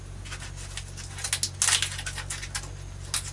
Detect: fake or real real